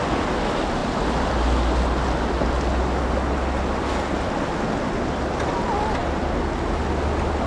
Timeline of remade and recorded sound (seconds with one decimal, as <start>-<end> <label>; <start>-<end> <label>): 0.0-7.5 recorded

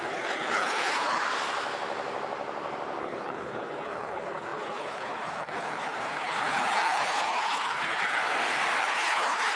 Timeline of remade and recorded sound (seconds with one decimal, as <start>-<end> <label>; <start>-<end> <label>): 0.0-1.2 remade; 1.2-3.0 recorded; 3.0-8.2 remade; 8.2-8.8 recorded; 8.8-9.6 remade

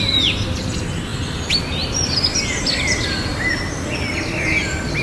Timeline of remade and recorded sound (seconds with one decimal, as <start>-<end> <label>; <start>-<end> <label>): 0.0-5.0 recorded

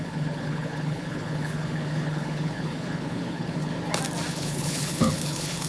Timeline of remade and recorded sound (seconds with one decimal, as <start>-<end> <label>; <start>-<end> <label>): 0.0-3.7 remade; 3.7-4.3 recorded; 4.3-5.7 remade

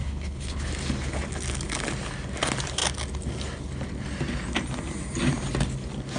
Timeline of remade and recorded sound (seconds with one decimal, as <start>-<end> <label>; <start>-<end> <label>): 0.0-0.7 remade; 0.7-6.2 recorded

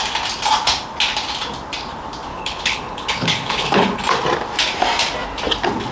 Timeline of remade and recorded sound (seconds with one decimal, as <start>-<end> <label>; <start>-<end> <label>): 0.0-2.3 recorded; 2.3-4.0 remade; 4.0-5.9 recorded

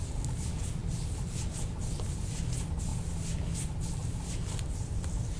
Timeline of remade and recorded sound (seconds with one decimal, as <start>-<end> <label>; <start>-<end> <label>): 0.0-5.4 recorded